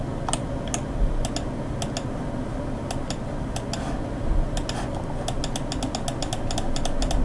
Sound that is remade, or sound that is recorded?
recorded